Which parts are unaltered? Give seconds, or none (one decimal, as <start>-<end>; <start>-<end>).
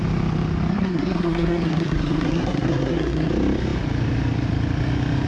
0.0-0.7; 3.3-5.3